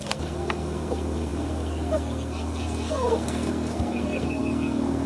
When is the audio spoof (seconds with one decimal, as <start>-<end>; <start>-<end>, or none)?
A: 0.0-5.1

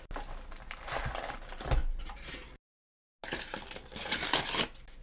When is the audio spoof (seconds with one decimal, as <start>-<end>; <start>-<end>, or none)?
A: none

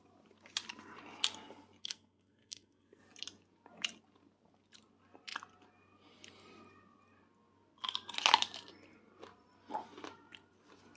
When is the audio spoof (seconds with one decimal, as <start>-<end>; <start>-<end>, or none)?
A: 1.8-3.0

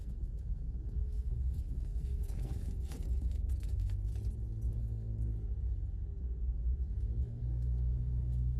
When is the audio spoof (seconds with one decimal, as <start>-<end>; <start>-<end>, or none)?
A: 0.0-4.1; 4.8-5.3; 7.2-8.6

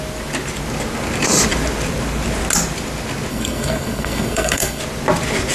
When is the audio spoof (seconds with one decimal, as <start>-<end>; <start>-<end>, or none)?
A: 3.3-4.8

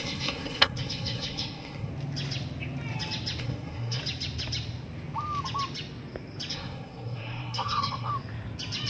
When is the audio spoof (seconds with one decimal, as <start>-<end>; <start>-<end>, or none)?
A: 0.0-1.9; 3.4-4.0; 6.5-8.1

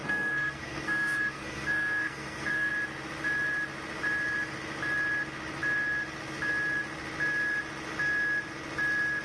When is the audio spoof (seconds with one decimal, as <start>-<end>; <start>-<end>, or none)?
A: 0.0-2.7